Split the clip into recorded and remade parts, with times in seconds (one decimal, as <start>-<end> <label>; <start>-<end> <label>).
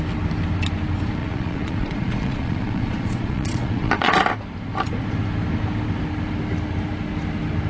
0.0-1.2 recorded; 1.2-4.2 remade; 4.2-7.7 recorded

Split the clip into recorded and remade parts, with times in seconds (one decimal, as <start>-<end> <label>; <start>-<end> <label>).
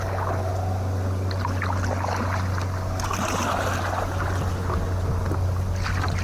0.0-6.2 recorded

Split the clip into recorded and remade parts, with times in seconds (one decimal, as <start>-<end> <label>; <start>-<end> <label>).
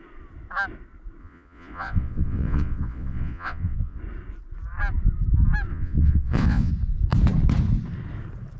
0.0-1.2 recorded; 1.2-4.0 remade; 4.0-5.7 recorded; 5.7-6.7 remade; 6.7-8.6 recorded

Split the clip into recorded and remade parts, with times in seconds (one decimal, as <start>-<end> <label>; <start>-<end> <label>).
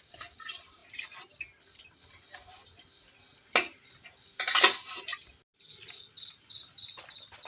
0.0-0.8 recorded; 0.8-2.0 remade; 2.0-7.5 recorded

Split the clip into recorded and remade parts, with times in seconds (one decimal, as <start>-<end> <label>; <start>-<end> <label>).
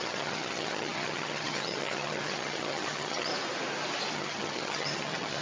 0.0-3.3 remade; 3.3-4.1 recorded; 4.1-5.4 remade